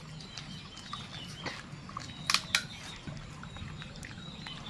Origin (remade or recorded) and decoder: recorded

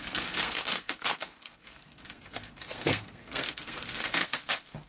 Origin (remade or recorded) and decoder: remade, codec, SNAC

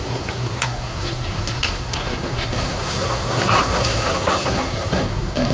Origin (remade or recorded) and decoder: remade, codec, SNAC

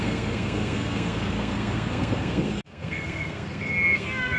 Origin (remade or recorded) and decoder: remade, codec, SNAC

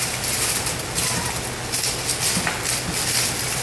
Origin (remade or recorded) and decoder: recorded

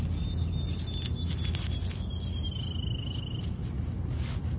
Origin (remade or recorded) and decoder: recorded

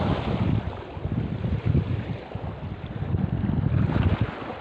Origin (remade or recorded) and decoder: recorded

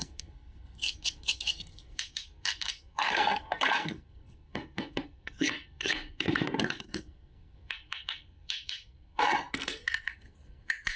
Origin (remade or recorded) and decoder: remade, codec, SNAC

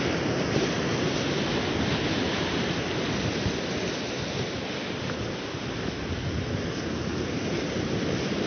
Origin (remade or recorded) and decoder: recorded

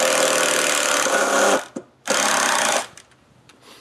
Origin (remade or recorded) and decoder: recorded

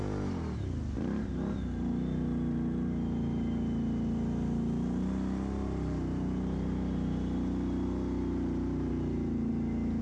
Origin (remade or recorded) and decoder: recorded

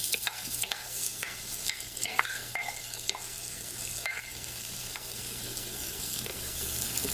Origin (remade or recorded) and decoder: remade, codec, SNAC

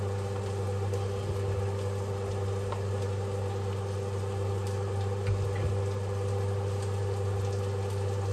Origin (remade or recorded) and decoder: recorded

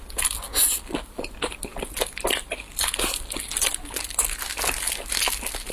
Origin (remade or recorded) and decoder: recorded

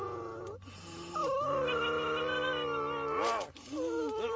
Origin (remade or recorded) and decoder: recorded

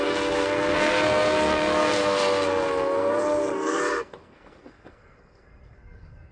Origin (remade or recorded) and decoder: remade, codec, SNAC